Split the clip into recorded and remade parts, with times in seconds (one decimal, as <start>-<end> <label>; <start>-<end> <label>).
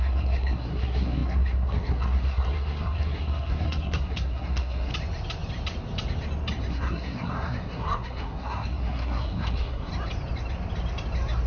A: 0.0-4.9 remade; 4.9-6.7 recorded; 6.7-9.9 remade; 9.9-11.5 recorded